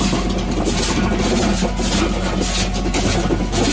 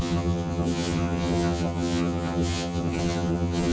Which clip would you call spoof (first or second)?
second